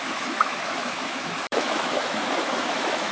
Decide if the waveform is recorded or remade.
remade